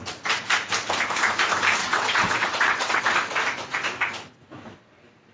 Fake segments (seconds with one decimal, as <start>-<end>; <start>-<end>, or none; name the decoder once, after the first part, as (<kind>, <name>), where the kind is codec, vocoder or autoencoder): 1.8-3.0 (vocoder, WaveNeXt)